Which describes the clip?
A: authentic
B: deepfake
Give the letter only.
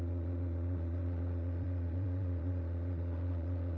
B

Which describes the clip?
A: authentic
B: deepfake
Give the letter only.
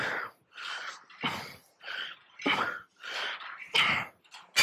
A